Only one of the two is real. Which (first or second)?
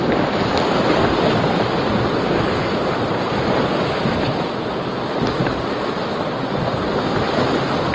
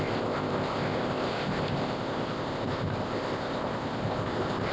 first